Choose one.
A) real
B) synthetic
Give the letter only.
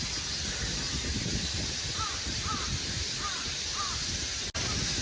A